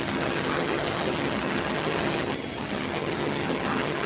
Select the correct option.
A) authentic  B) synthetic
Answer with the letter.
B